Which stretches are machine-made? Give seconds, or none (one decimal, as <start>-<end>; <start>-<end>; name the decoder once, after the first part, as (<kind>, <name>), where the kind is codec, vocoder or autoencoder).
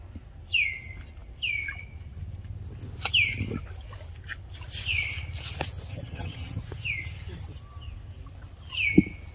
5.9-6.6 (vocoder, HiFi-GAN)